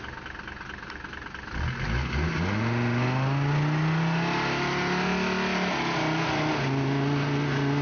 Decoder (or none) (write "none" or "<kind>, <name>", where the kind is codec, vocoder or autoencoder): none